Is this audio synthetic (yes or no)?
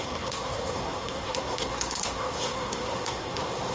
yes